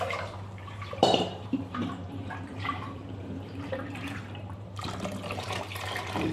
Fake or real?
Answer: fake